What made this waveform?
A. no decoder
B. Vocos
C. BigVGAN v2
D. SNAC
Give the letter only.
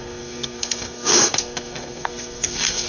D